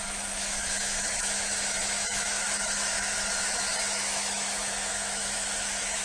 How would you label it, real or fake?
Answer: fake